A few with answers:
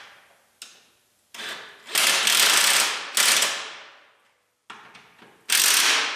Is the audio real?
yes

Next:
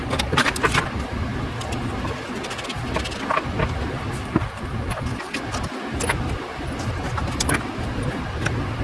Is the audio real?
yes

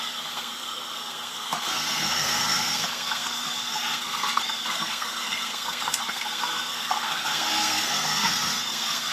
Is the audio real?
no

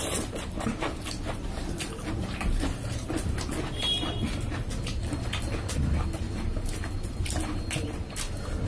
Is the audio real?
yes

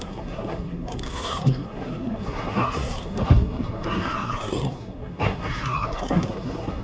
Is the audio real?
no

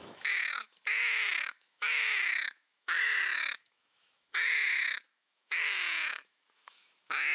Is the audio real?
no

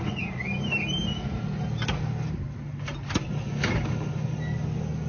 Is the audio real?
yes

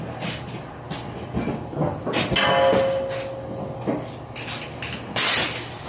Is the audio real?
yes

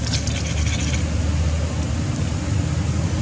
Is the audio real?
yes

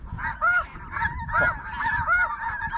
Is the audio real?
yes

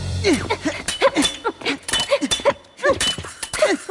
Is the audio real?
no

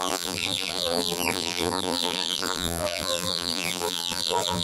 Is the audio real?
no